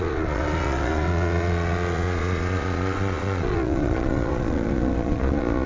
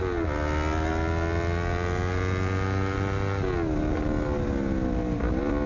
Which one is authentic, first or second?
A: second